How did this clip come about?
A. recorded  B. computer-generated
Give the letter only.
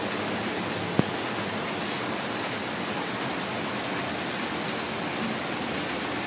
A